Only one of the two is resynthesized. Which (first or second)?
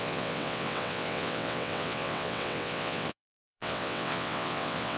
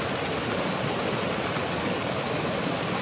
first